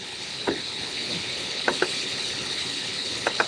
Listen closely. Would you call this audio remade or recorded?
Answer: remade